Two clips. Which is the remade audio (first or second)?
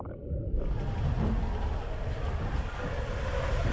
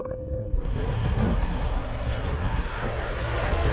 second